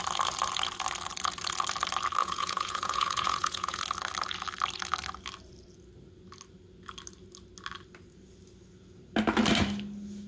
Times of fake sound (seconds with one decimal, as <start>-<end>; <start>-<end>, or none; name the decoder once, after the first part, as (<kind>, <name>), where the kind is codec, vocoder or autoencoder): 2.2-3.8 (vocoder, Vocos)